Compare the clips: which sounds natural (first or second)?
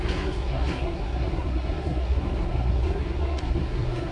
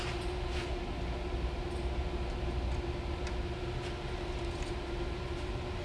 second